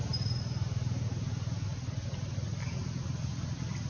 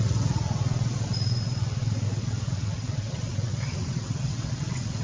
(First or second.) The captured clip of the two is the first